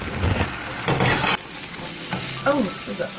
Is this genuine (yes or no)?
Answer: yes